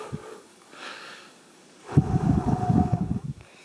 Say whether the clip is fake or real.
fake